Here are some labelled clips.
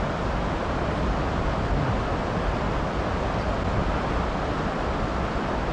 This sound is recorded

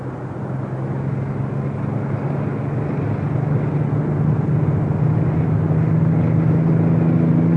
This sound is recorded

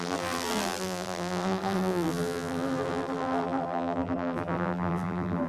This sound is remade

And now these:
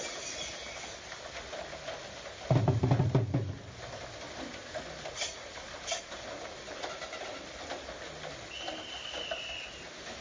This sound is recorded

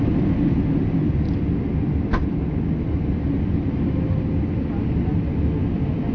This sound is recorded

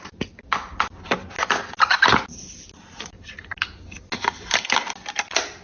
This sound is recorded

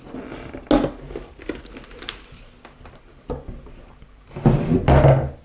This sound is recorded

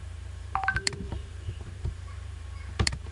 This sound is remade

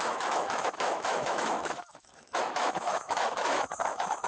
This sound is remade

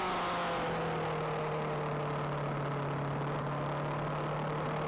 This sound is recorded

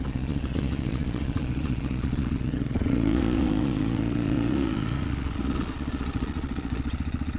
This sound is remade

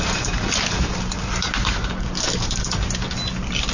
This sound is recorded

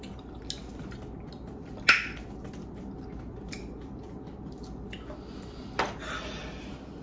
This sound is recorded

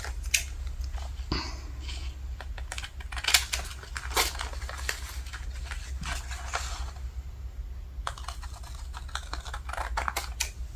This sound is recorded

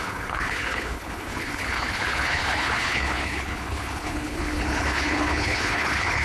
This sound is remade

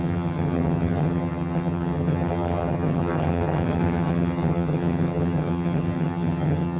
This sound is remade